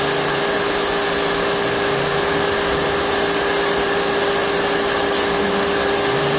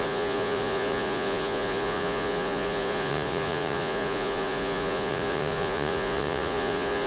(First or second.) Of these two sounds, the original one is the first